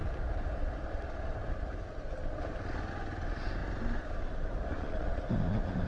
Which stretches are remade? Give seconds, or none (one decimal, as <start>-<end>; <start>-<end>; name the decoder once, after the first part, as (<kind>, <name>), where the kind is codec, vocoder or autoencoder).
4.7-5.2 (vocoder, Vocos)